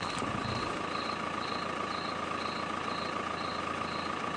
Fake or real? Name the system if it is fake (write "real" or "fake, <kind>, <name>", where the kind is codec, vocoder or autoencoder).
real